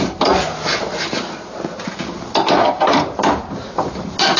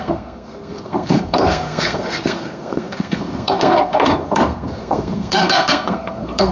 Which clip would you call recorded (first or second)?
first